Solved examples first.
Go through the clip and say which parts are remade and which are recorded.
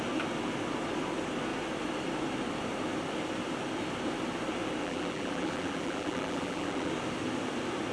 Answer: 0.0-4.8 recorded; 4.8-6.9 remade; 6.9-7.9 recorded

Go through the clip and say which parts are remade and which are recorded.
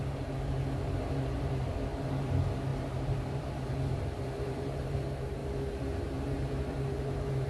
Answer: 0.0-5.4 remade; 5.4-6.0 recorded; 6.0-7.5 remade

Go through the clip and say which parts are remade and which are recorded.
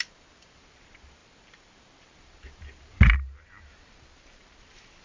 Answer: 0.0-5.0 remade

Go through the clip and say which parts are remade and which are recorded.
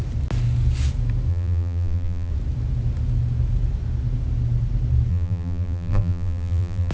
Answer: 0.0-1.3 recorded; 1.3-2.3 remade; 2.3-5.1 recorded; 5.1-6.9 remade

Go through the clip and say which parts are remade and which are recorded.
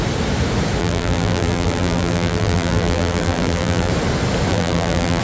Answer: 0.0-0.8 recorded; 0.8-3.9 remade; 3.9-4.5 recorded; 4.5-5.2 remade